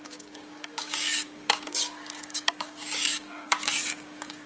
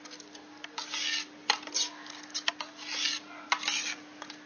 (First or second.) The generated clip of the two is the first